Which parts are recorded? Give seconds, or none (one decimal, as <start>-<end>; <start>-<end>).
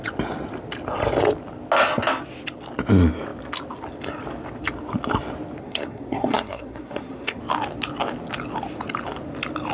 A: 0.0-5.6; 7.4-9.7